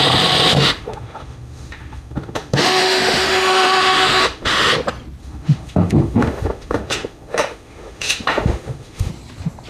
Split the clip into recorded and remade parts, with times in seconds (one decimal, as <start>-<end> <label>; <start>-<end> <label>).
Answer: 0.0-0.5 recorded; 0.5-4.7 remade; 4.7-5.2 recorded; 5.2-9.1 remade; 9.1-9.7 recorded